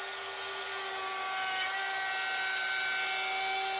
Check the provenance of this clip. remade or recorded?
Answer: recorded